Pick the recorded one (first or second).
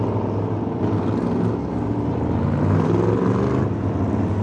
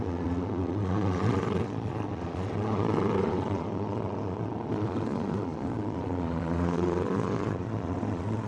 first